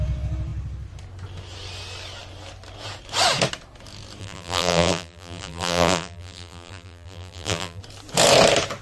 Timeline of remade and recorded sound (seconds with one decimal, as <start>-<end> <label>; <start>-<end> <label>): 0.0-4.2 recorded; 4.2-7.8 remade; 7.8-8.8 recorded